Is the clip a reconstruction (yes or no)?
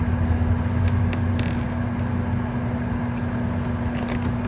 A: no